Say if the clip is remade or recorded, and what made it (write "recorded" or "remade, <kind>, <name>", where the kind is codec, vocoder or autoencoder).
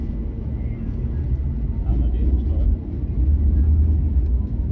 recorded